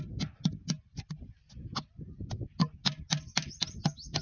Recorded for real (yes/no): yes